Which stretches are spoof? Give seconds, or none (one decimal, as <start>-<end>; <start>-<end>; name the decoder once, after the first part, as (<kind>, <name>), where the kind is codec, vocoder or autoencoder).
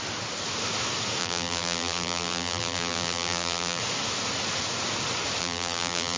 1.2-3.8 (vocoder, BigVGAN v2); 5.4-6.2